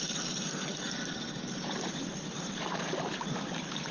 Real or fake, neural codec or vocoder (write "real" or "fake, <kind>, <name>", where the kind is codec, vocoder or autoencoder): fake, vocoder, BigVGAN v2